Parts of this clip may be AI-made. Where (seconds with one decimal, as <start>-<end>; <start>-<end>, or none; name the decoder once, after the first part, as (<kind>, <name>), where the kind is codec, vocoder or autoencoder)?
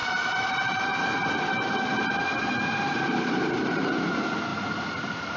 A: 0.0-0.5 (vocoder, BigVGAN v2); 0.9-4.1; 4.5-5.4